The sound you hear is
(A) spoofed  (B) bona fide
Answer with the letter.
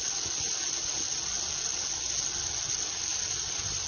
B